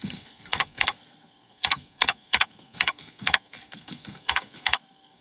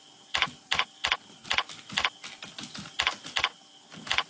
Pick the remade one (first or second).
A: first